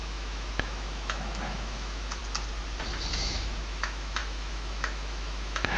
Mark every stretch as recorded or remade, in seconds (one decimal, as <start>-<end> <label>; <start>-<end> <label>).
0.0-2.2 remade; 2.2-3.1 recorded; 3.1-5.8 remade